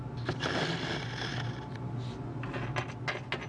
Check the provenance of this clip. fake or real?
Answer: real